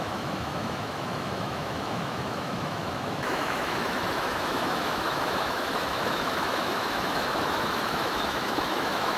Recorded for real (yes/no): no